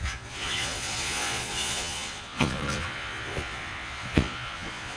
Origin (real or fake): fake